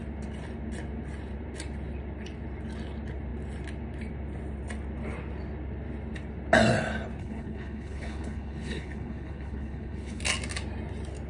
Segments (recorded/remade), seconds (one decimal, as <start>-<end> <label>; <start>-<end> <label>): 0.0-7.2 recorded; 7.2-10.2 remade; 10.2-11.3 recorded